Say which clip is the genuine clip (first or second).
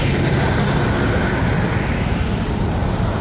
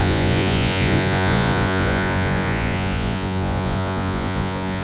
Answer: first